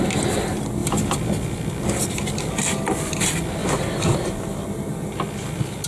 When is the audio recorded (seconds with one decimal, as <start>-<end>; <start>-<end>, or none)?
0.0-3.6; 4.3-5.9